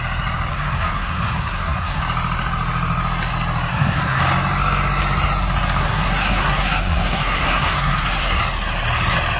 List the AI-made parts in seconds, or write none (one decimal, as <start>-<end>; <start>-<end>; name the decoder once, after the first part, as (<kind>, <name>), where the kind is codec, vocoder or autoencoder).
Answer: 0.5-2.0 (codec, SNAC); 3.7-4.2; 5.8-8.4